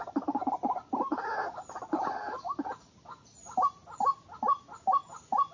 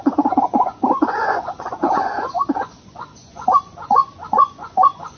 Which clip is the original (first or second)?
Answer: first